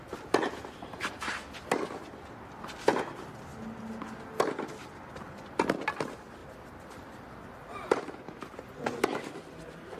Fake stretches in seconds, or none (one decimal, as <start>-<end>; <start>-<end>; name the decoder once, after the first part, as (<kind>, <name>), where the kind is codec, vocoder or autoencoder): none